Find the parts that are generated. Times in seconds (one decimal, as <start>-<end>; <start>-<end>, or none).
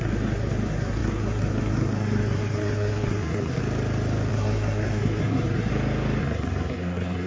0.0-3.6; 4.3-5.7; 6.2-7.3